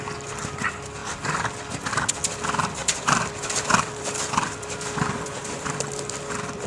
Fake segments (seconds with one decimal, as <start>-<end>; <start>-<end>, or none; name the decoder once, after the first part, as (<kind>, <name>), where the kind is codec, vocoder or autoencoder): 2.8-6.7 (vocoder, BigVGAN v2)